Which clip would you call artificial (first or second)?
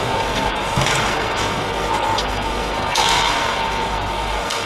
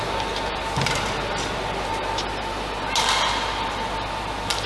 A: first